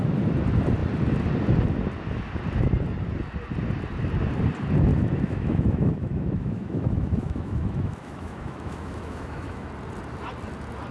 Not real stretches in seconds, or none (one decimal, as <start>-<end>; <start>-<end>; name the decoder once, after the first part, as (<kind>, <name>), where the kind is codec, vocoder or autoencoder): 4.9-9.7 (autoencoder, DAC-VAE)